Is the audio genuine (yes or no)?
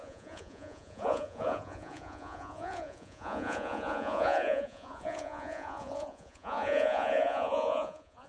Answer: no